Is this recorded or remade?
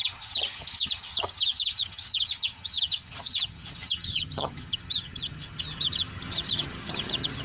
remade